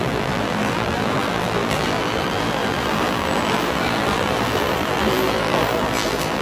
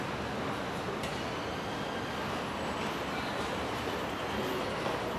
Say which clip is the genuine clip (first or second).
second